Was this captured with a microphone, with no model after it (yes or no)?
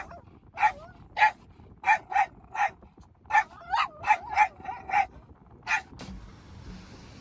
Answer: yes